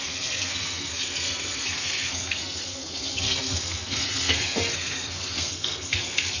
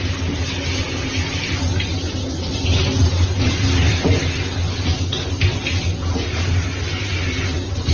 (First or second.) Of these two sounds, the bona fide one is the second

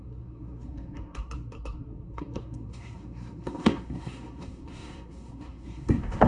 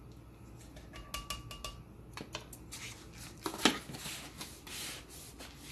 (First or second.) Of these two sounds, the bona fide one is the second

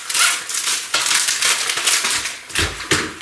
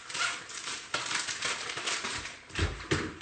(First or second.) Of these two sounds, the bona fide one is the first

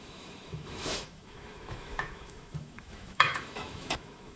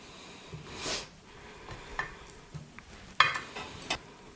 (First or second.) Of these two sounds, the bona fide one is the second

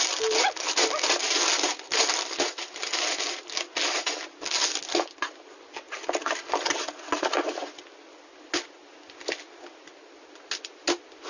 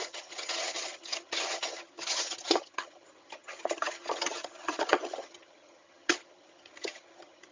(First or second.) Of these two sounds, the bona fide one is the first